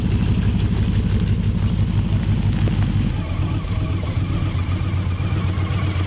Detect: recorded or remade recorded